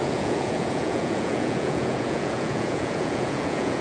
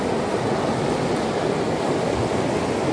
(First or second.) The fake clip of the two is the first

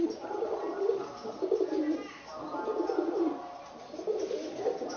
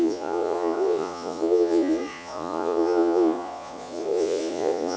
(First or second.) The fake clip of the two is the second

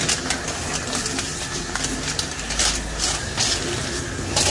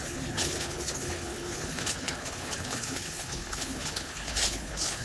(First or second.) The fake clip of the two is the second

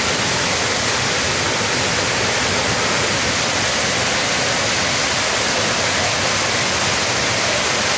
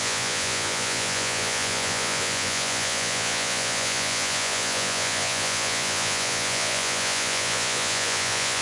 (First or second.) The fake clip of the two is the second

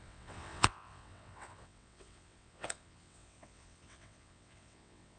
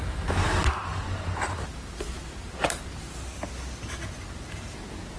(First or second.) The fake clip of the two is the first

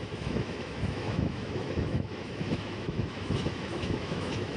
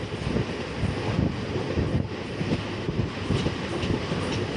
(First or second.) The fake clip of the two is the first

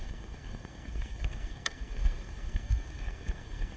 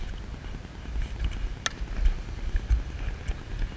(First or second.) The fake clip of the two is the first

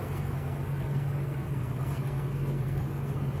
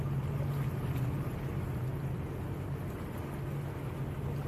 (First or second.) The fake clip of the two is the first